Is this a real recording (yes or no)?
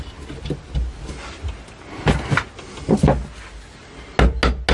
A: yes